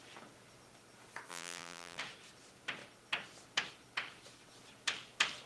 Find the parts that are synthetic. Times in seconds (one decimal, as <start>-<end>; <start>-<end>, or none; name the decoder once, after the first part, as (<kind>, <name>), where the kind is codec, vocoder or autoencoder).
1.3-2.0 (vocoder, BigVGAN v2)